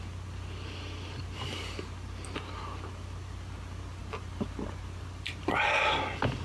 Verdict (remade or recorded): recorded